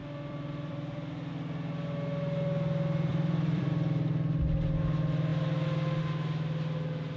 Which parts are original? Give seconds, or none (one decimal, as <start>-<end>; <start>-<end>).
1.3-3.1; 3.7-7.2